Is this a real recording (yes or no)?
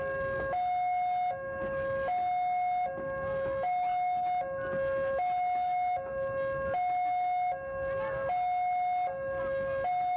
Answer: yes